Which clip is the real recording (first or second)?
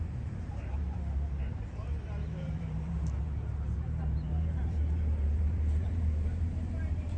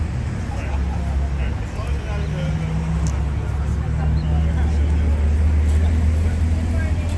second